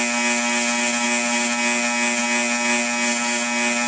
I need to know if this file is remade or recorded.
recorded